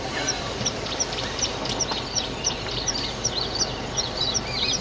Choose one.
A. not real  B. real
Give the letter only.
A